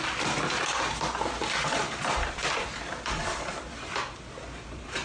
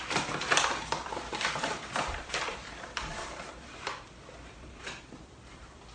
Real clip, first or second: first